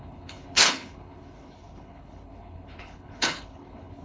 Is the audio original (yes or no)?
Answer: no